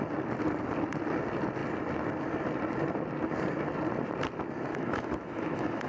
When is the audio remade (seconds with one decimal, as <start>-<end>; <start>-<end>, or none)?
4.7-5.9